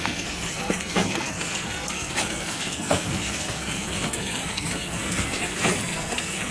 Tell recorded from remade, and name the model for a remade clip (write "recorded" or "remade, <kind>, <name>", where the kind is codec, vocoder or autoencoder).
remade, codec, SNAC